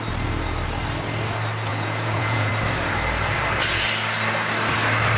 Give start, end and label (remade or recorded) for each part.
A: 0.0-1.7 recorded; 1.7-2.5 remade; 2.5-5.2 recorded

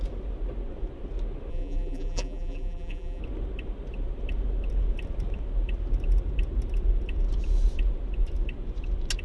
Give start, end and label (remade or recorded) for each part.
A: 0.0-1.5 recorded; 1.5-3.2 remade; 3.2-9.2 recorded

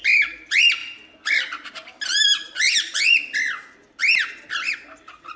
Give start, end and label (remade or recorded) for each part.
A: 0.0-0.8 recorded; 0.8-4.0 remade; 4.0-5.4 recorded

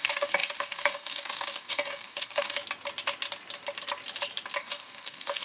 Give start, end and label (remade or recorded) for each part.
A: 0.0-2.6 remade; 2.6-4.6 recorded; 4.6-5.4 remade

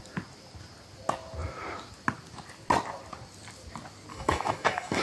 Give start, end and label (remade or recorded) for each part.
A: 0.0-4.1 recorded; 4.1-5.0 remade

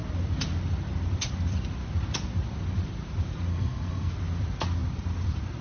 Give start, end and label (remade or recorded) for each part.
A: 0.0-3.5 recorded; 3.5-4.1 remade; 4.1-5.6 recorded